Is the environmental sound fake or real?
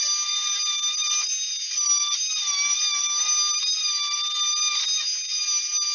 real